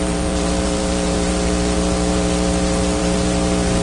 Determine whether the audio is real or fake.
fake